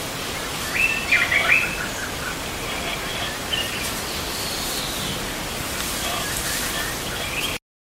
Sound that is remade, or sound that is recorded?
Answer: recorded